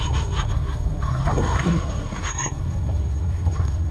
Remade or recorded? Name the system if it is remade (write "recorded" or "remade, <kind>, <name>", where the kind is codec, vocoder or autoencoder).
remade, codec, SNAC